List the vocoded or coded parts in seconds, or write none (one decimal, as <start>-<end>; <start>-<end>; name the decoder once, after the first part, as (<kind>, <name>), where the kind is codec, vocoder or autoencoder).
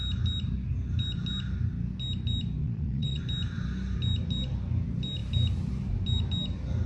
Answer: 2.6-3.2 (vocoder, Vocos)